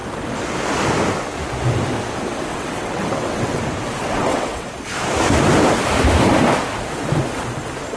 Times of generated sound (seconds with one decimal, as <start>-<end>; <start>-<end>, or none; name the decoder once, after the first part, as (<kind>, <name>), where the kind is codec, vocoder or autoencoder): 2.5-3.6 (vocoder, WaveNeXt); 4.0-4.7